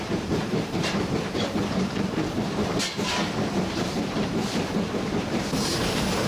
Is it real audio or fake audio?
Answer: fake